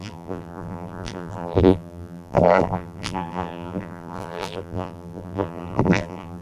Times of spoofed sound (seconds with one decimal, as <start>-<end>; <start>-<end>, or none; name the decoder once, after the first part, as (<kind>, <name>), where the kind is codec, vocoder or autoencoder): 0.0-6.4 (vocoder, BigVGAN v2)